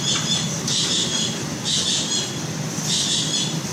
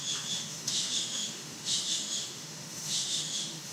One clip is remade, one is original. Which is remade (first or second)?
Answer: second